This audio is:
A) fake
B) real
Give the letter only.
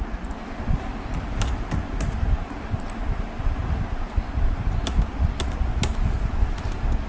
B